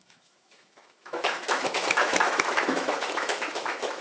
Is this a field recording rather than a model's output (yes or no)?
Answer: no